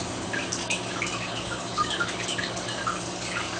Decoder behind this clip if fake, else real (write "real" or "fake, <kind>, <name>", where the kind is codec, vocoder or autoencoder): fake, codec, DAC